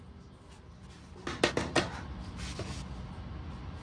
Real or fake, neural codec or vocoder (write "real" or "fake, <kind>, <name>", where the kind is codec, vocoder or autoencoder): real